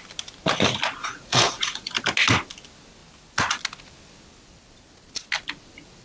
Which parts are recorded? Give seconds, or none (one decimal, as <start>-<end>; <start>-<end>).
0.0-1.0; 1.9-6.0